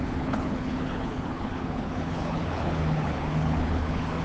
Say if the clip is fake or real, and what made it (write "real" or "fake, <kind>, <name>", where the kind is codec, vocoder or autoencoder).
fake, codec, HILCodec